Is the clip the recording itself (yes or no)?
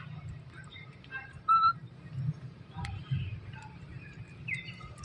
no